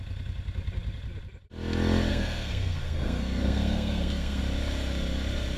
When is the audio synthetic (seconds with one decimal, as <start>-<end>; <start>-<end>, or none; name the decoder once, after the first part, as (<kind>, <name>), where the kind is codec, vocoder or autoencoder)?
2.1-4.4 (codec, SNAC)